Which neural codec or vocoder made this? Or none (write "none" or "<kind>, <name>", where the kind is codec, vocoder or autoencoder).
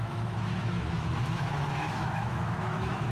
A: autoencoder, DAC-VAE